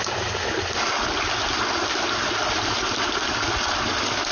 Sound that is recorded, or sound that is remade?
recorded